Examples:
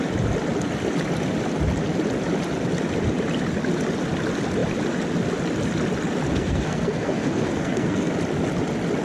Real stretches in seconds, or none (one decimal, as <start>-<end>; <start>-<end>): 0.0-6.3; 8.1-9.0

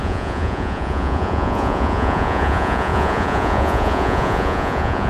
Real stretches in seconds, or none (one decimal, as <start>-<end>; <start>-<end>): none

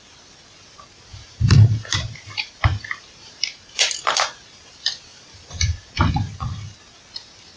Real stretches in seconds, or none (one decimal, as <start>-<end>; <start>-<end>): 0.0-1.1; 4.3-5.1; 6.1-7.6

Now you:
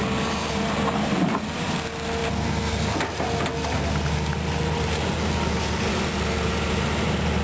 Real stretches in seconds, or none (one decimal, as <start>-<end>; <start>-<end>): 0.0-7.4

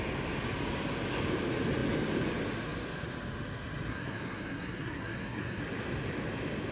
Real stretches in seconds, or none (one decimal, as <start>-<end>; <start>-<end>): 0.0-3.9; 5.6-6.7

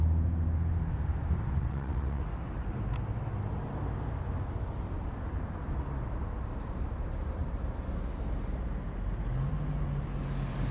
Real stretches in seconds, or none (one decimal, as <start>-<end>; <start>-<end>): 0.0-1.6; 2.2-10.7

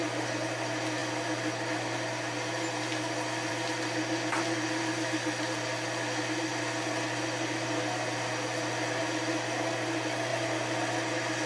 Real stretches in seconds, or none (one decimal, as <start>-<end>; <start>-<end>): 0.0-11.5

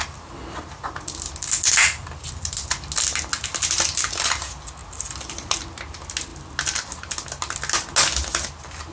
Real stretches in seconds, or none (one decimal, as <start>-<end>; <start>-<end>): 0.0-8.9